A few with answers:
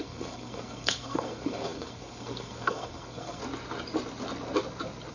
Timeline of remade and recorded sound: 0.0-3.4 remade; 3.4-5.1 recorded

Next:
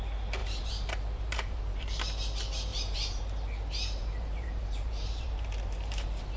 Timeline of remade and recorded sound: 0.0-0.4 recorded; 0.4-2.0 remade; 2.0-2.7 recorded; 2.7-3.2 remade; 3.2-4.0 recorded; 4.0-6.4 remade

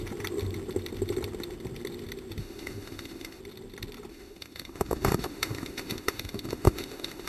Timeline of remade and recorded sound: 0.0-2.4 recorded; 2.4-3.4 remade; 3.4-4.1 recorded; 4.1-7.3 remade

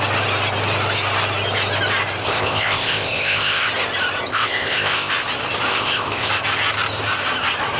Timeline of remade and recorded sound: 0.0-2.2 recorded; 2.2-3.7 remade; 3.7-4.3 recorded; 4.3-5.1 remade; 5.1-5.7 recorded; 5.7-6.3 remade; 6.3-7.8 recorded

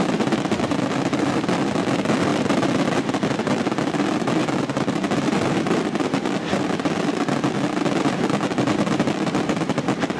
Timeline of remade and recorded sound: 0.0-10.2 recorded

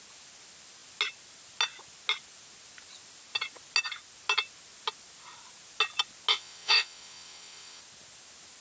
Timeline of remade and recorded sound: 0.0-6.3 recorded; 6.3-7.8 remade; 7.8-8.6 recorded

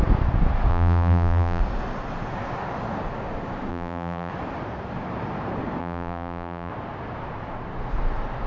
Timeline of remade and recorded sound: 0.0-0.7 recorded; 0.7-1.6 remade; 1.6-3.7 recorded; 3.7-4.3 remade; 4.3-5.8 recorded; 5.8-6.7 remade; 6.7-8.5 recorded